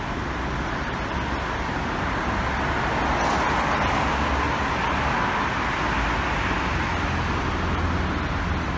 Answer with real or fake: real